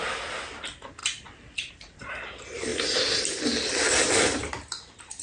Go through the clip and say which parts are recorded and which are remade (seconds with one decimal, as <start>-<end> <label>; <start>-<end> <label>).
0.0-1.0 recorded; 1.0-2.1 remade; 2.1-5.2 recorded